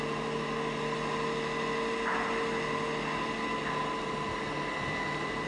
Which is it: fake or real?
real